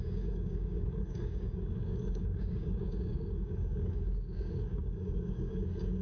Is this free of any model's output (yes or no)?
no